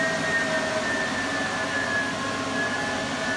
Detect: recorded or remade recorded